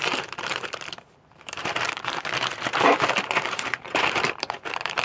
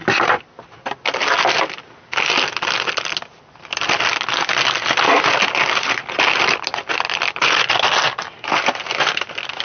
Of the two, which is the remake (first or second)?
first